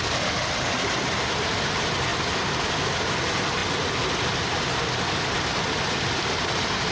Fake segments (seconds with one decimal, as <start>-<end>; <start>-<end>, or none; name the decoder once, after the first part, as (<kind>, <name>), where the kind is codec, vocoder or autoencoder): none

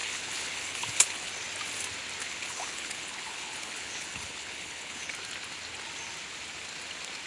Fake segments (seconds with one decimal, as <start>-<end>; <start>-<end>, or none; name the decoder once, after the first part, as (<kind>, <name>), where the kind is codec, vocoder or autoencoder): 0.0-1.3 (codec, HILCodec); 2.2-5.1

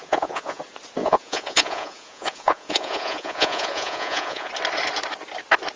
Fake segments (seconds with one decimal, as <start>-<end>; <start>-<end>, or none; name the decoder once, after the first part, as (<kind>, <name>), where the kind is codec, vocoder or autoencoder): 0.0-0.6 (vocoder, Vocos); 1.0-4.5

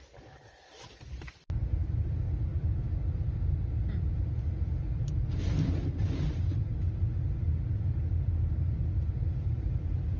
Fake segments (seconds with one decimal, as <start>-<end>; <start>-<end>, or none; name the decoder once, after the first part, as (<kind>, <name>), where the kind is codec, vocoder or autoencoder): none

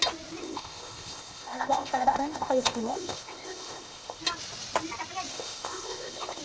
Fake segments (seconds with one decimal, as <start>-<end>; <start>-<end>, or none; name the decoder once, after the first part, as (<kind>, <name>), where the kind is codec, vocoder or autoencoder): 0.4-4.2 (codec, ZipCodec); 5.3-6.4